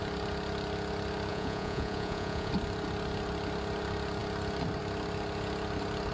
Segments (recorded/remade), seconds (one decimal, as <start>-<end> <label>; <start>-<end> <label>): 0.0-1.3 recorded; 1.3-2.5 remade; 2.5-6.1 recorded